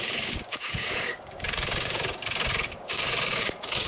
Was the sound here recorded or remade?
remade